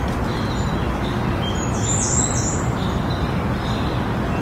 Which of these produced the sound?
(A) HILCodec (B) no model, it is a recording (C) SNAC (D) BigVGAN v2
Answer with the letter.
B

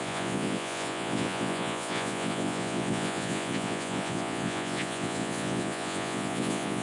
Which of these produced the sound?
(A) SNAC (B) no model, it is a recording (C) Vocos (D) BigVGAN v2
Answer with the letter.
C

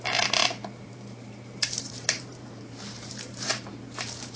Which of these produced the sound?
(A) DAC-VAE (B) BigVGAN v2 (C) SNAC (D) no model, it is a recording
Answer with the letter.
B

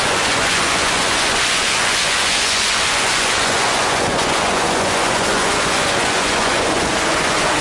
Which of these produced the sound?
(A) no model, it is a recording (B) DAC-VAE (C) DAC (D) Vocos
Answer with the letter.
D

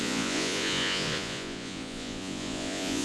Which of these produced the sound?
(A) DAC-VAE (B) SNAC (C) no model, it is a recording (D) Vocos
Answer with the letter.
D